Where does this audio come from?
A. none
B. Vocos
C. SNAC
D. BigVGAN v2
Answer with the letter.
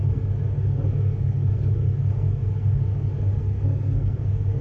C